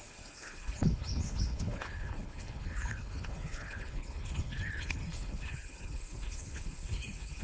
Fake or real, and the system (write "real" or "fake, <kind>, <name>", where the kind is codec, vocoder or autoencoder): fake, codec, HILCodec